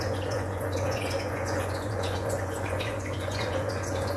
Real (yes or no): no